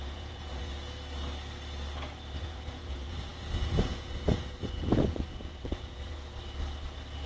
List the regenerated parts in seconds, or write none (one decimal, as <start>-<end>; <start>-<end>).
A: 0.0-0.7; 2.4-6.2